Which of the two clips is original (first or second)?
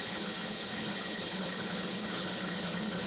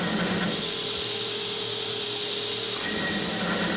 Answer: second